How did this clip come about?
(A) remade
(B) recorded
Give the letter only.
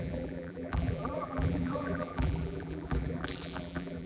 A